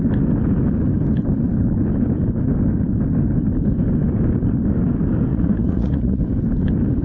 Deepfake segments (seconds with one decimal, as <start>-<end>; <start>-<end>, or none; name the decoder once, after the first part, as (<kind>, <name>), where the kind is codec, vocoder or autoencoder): 5.3-6.2 (vocoder, Vocos)